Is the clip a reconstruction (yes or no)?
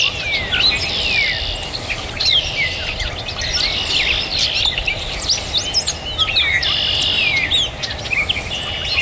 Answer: no